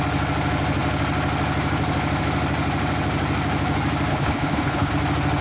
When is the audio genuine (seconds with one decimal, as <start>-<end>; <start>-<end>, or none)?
0.0-4.1; 4.9-5.4